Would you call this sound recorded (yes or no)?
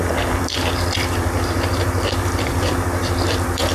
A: no